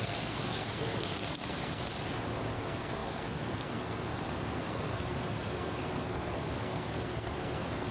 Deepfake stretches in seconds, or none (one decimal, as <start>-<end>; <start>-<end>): 0.0-1.9; 2.5-7.9